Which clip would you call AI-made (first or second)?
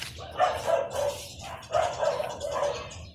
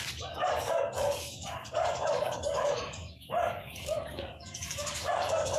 second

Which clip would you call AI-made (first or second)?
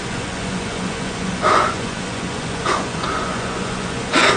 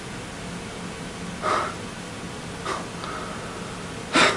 first